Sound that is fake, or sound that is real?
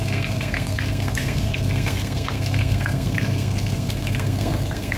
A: fake